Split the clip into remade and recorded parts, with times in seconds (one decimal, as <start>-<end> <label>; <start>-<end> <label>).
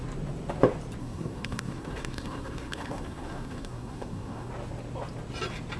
0.0-1.0 recorded; 1.0-4.5 remade; 4.5-5.8 recorded